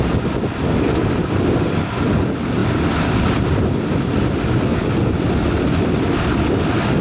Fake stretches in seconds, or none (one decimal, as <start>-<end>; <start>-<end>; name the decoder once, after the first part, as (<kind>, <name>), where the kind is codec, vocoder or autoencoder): none

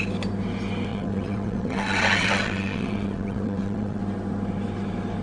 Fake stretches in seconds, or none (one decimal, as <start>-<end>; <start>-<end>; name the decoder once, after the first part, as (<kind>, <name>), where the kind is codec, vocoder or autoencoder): 0.9-4.0 (vocoder, WaveNeXt)

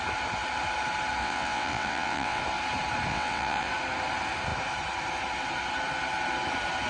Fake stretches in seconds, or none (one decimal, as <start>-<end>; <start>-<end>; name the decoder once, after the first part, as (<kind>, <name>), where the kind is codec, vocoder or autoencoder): 1.2-2.4 (vocoder, WaveNeXt); 3.1-3.7